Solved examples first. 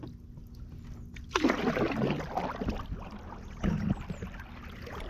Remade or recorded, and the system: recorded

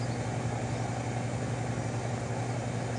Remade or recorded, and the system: recorded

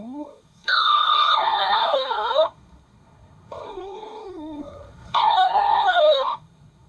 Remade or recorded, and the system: remade, codec, SNAC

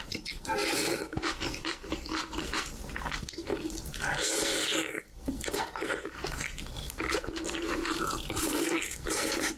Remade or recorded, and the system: remade, codec, SNAC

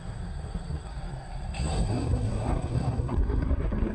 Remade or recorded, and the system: remade, codec, SNAC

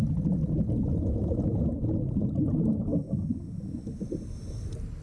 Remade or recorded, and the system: recorded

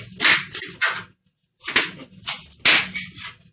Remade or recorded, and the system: recorded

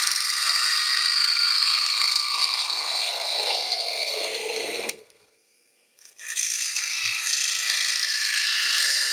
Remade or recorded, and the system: remade, codec, SNAC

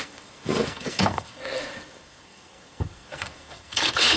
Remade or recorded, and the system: remade, codec, SNAC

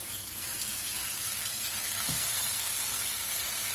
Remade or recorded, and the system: remade, codec, SNAC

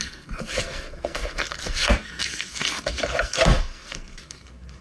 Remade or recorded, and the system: remade, codec, SNAC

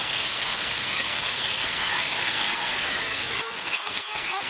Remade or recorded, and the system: remade, codec, SNAC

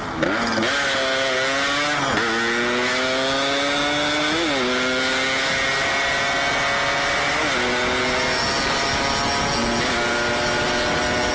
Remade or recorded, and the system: recorded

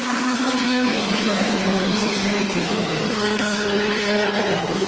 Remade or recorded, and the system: remade, codec, SNAC